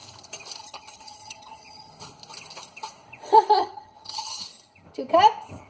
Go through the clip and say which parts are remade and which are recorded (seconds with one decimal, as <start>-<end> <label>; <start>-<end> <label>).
0.0-0.6 recorded; 0.6-1.9 remade; 1.9-3.6 recorded; 3.6-4.4 remade; 4.4-5.7 recorded